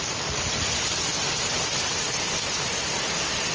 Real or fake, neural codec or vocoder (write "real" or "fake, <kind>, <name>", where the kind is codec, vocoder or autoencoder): real